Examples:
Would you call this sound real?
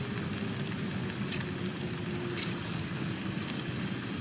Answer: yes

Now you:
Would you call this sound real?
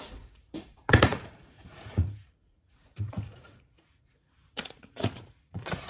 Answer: no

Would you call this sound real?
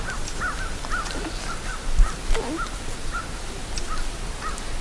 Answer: yes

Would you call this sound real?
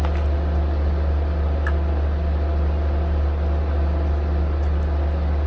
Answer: yes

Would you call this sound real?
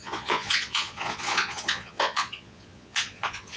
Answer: no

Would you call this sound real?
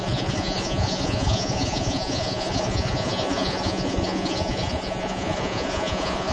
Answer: no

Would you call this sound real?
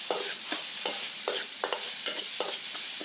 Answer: yes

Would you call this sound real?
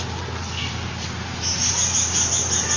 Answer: yes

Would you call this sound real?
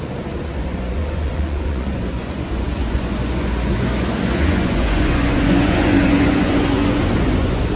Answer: no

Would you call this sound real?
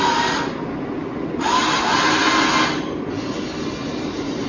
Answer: yes